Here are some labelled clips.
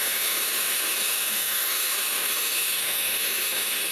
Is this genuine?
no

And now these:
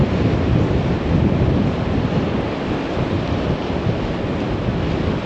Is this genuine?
yes